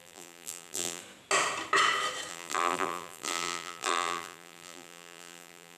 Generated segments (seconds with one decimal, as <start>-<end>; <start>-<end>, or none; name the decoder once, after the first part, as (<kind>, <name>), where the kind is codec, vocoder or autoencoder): 0.0-1.0 (vocoder, BigVGAN v2); 2.3-5.8